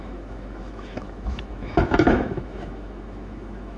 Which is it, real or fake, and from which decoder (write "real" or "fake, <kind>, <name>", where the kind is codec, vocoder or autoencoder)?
fake, autoencoder, DAC-VAE